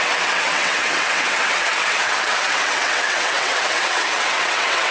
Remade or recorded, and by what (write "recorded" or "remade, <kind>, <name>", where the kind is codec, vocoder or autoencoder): remade, vocoder, WaveNeXt